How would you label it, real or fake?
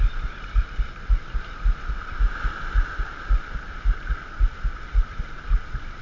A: real